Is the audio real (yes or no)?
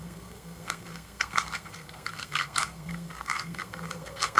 no